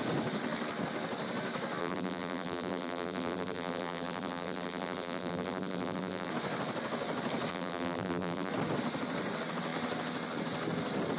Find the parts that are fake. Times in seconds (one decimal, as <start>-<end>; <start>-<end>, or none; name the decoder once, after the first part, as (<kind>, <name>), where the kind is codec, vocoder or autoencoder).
1.8-6.3 (vocoder, BigVGAN v2); 7.5-8.5